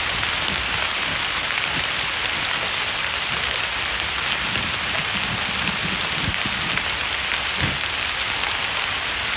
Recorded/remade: recorded